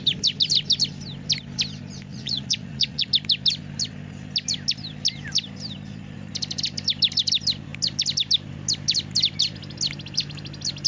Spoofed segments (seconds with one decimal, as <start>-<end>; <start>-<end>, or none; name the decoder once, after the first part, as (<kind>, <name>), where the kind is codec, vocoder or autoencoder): 2.1-3.1 (vocoder, Vocos)

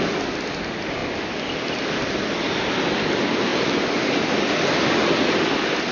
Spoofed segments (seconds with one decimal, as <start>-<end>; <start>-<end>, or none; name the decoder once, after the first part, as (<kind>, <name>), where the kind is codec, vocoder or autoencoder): none

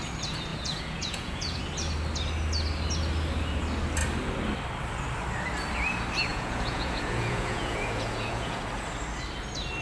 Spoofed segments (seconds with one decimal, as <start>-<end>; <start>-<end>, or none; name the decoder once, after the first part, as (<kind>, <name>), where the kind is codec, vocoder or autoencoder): 0.5-1.6 (vocoder, Vocos); 6.3-8.6

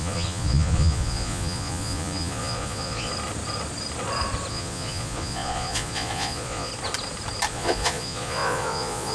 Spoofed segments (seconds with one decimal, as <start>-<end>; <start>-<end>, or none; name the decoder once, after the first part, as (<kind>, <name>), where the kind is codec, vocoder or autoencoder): 0.0-3.1 (vocoder, Vocos); 4.5-6.7; 7.5-9.1

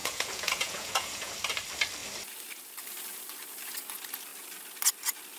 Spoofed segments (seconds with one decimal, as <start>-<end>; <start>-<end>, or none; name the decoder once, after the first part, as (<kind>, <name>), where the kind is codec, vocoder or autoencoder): 0.0-1.3 (vocoder, Vocos)